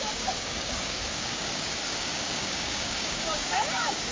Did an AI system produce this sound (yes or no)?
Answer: yes